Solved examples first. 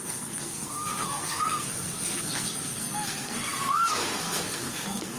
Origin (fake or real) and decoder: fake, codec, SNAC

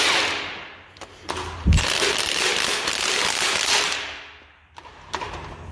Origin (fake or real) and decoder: real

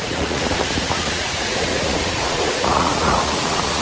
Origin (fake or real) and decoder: fake, vocoder, Vocos